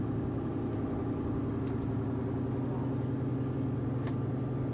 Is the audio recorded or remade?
recorded